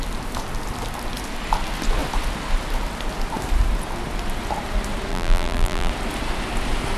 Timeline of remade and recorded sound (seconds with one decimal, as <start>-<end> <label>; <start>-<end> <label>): 0.0-5.1 recorded; 5.1-5.9 remade; 5.9-7.0 recorded